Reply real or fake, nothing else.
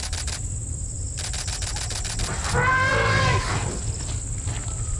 real